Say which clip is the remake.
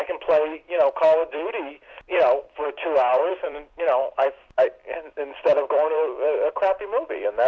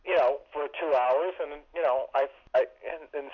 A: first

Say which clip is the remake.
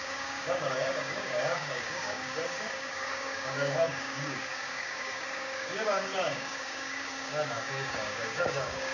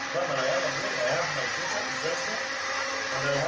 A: first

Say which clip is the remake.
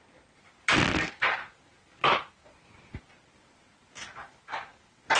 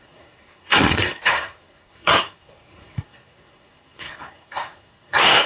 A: second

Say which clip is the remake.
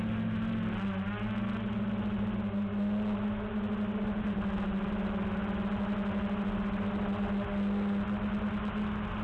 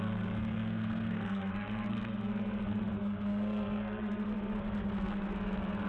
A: second